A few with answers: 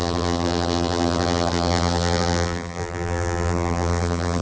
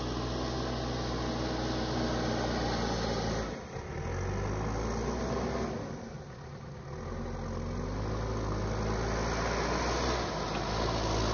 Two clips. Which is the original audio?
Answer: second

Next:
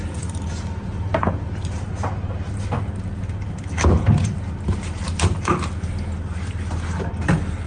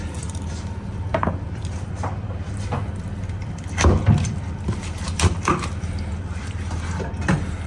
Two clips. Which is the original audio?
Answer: first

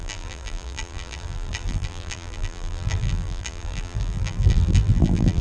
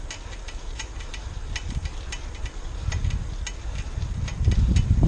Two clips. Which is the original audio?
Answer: second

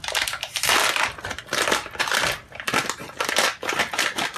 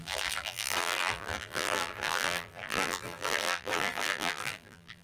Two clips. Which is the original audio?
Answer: first